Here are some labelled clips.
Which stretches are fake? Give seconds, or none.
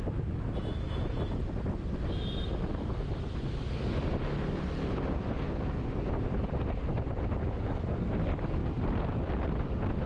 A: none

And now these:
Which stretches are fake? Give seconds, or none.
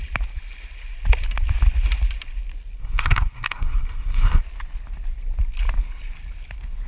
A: 2.8-4.4 (codec, SNAC)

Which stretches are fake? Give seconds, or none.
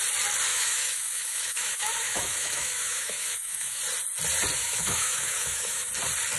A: 0.5-3.8 (autoencoder, DAC-VAE); 4.6-5.9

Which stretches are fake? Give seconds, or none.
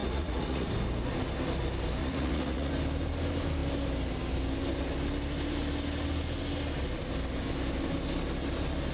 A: 0.0-0.7 (vocoder, Vocos); 2.0-2.7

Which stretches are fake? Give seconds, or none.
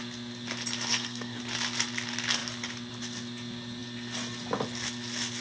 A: 0.9-1.4 (codec, SNAC)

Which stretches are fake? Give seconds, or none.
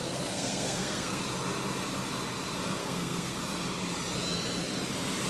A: 0.0-1.2 (codec, SNAC); 2.8-3.4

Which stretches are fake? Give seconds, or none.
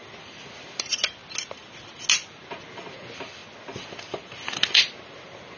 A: none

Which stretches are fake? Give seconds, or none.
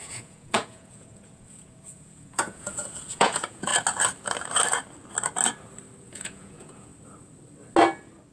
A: 0.0-3.7 (vocoder, Vocos); 6.0-6.9